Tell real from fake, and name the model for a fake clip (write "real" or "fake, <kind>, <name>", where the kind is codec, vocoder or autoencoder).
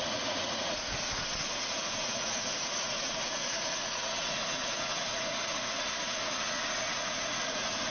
fake, vocoder, Vocos